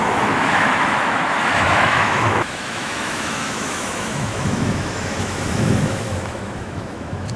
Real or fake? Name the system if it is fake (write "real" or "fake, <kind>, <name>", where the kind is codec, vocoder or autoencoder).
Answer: fake, autoencoder, DAC-VAE